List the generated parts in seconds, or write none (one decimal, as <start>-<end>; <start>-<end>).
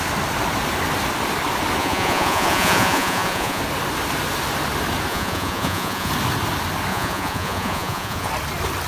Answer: 1.8-3.6; 5.1-6.1; 6.9-8.3